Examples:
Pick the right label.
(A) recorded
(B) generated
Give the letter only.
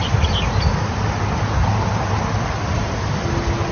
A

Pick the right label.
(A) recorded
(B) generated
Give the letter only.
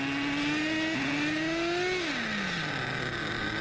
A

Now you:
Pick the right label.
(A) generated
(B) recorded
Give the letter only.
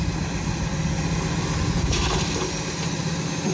B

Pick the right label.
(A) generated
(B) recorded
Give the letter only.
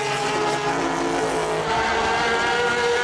B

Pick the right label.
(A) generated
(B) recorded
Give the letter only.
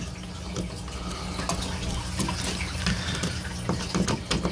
B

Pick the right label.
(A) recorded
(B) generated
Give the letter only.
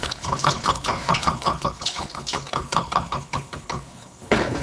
B